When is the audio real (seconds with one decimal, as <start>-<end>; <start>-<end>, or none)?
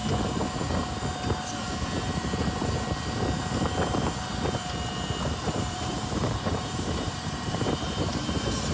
0.0-5.2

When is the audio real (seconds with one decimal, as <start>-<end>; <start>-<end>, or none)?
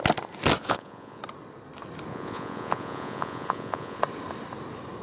0.0-0.6; 1.2-2.1; 4.0-5.0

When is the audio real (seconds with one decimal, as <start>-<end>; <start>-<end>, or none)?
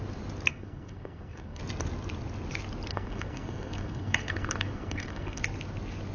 0.0-0.5; 1.6-2.9; 5.4-6.1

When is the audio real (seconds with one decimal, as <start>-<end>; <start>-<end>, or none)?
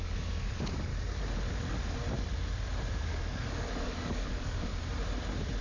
0.9-2.9; 4.7-5.6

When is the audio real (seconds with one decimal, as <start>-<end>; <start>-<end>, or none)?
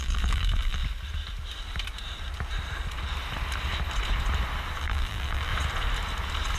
0.8-4.8; 5.5-6.6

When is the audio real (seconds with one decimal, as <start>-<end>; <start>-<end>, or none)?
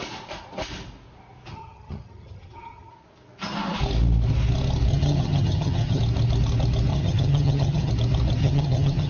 0.0-1.5; 2.9-4.9; 6.0-6.9; 7.9-8.4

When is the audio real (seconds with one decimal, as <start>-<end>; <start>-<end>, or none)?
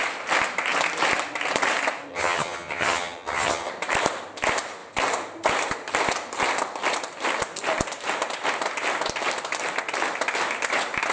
0.0-2.1; 3.7-11.1